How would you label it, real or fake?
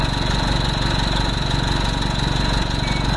real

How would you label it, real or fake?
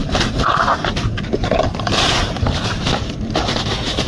fake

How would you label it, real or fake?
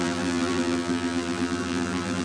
fake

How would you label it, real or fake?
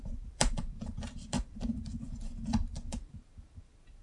fake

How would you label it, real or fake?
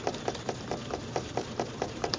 fake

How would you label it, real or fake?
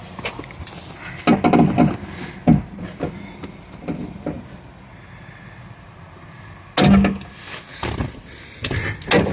real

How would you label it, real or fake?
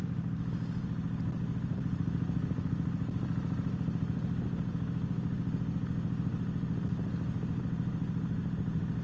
real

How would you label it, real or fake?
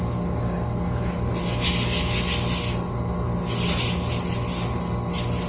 real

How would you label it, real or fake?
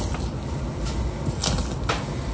real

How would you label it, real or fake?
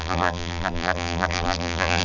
fake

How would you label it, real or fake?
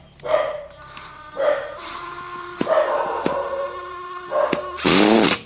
fake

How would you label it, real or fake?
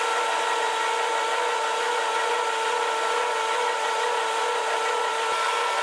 fake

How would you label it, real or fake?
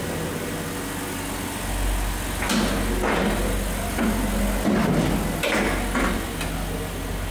real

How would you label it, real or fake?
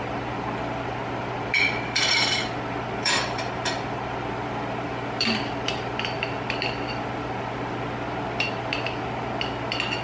fake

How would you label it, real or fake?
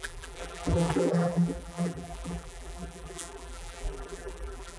fake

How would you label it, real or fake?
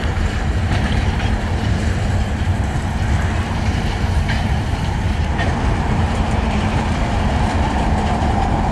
fake